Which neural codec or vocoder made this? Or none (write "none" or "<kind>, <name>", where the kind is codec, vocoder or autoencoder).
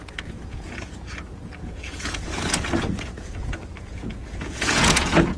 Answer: vocoder, Vocos